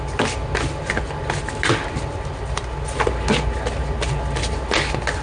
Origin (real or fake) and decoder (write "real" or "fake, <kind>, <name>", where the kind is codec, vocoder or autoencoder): real